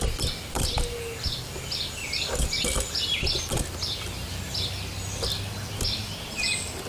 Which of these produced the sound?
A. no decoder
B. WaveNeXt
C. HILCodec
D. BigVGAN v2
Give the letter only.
D